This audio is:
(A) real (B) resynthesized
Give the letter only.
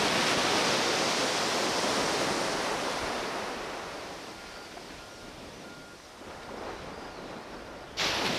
A